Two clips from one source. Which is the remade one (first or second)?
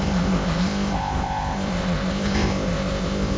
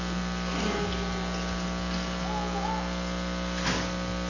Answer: first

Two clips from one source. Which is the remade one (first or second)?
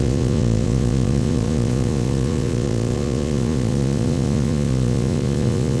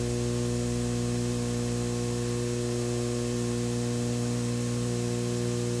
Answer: first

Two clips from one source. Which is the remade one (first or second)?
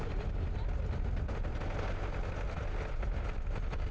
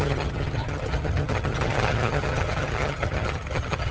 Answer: second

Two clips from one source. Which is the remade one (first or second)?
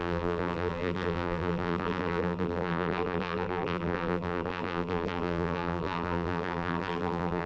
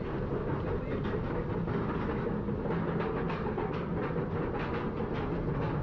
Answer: first